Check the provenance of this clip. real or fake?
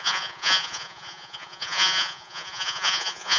fake